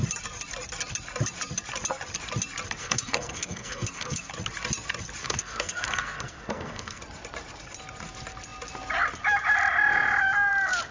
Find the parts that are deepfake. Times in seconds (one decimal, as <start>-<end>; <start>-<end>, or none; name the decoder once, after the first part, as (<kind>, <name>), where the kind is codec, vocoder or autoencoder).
2.8-4.3 (codec, SNAC); 5.2-7.0